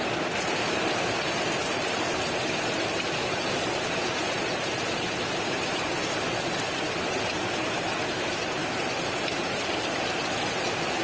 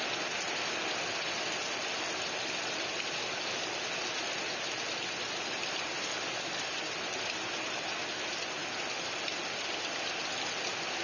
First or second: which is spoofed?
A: first